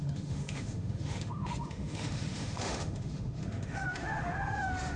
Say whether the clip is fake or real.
fake